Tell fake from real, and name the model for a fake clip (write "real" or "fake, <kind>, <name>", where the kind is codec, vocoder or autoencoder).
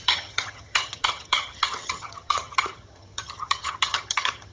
fake, vocoder, HiFi-GAN